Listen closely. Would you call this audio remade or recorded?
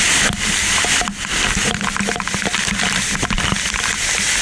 recorded